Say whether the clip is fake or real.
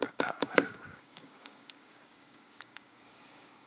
fake